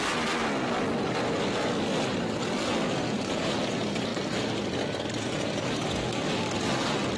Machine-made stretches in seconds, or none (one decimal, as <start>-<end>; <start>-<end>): none